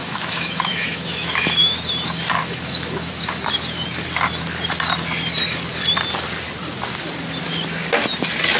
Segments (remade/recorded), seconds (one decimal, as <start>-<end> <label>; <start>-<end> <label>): 0.0-1.8 remade; 1.8-2.4 recorded; 2.4-3.1 remade; 3.1-8.6 recorded